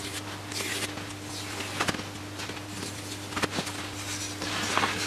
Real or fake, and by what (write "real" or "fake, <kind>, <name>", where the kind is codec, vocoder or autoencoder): real